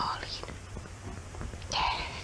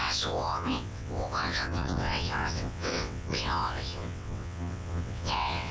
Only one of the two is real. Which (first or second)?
first